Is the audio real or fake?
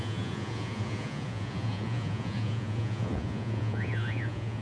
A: fake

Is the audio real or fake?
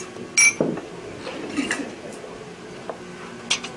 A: real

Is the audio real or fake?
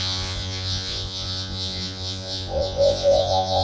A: fake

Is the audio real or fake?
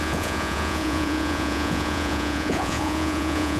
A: fake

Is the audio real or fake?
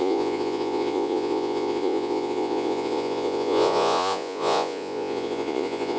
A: fake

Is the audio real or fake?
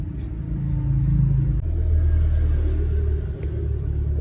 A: real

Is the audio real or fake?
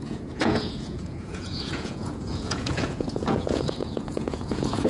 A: fake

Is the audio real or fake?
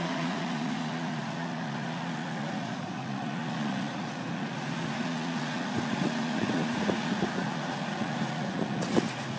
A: fake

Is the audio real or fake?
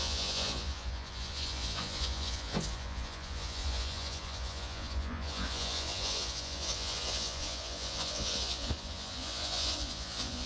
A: fake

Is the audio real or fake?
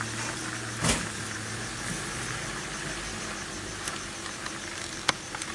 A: real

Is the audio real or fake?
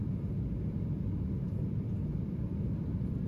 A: real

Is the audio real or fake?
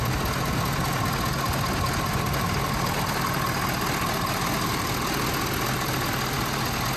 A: real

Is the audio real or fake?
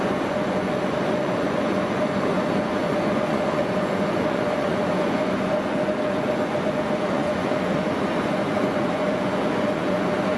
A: fake